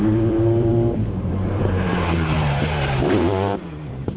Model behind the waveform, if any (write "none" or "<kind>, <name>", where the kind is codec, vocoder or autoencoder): vocoder, BigVGAN v2